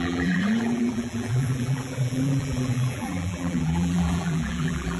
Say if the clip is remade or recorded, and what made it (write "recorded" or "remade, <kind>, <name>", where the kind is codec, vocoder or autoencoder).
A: remade, vocoder, BigVGAN v2